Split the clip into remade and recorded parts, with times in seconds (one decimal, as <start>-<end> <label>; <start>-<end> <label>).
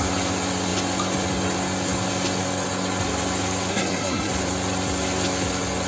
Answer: 0.0-3.7 recorded; 3.7-4.3 remade; 4.3-5.9 recorded